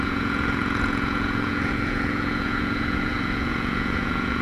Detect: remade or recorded remade